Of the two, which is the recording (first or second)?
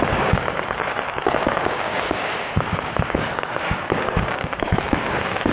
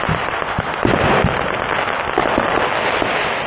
second